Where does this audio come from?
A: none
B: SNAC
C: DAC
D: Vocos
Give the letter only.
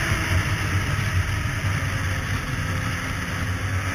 A